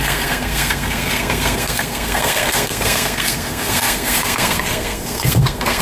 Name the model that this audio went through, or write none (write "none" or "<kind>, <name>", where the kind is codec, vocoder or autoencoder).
codec, SNAC